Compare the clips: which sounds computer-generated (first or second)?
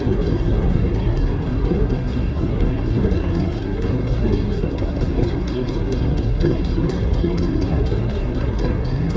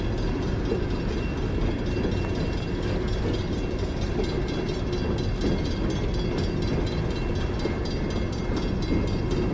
first